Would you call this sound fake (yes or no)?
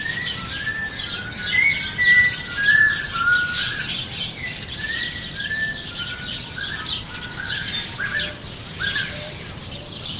no